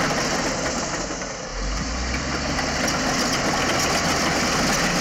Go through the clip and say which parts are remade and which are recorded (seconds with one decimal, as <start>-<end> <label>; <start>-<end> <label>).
0.0-1.5 recorded; 1.5-2.1 remade; 2.1-5.0 recorded